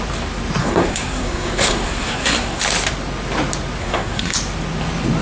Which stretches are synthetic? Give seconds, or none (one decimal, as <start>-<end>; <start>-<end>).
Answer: 0.6-2.6; 3.8-4.3